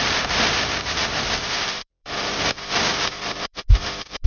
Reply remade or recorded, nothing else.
remade